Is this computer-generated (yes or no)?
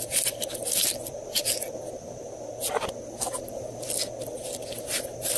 no